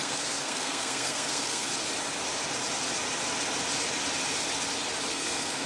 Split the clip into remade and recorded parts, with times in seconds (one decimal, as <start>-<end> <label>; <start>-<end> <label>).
0.0-1.7 remade; 1.7-5.1 recorded; 5.1-5.7 remade